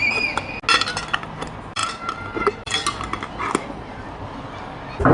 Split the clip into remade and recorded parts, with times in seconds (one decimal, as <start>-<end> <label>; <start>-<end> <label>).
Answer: 0.0-3.9 recorded; 3.9-4.5 remade; 4.5-5.1 recorded

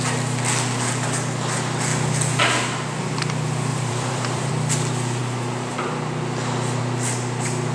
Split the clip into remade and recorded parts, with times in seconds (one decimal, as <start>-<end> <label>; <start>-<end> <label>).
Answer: 0.0-3.7 recorded; 3.7-4.5 remade; 4.5-7.7 recorded

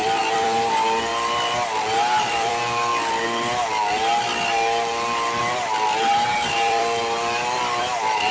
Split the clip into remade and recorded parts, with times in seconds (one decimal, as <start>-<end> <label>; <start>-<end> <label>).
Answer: 0.0-1.1 remade; 1.1-1.8 recorded; 1.8-2.9 remade; 2.9-5.4 recorded; 5.4-8.3 remade